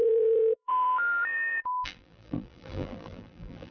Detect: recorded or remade remade